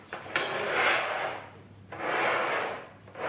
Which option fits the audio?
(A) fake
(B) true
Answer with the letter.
B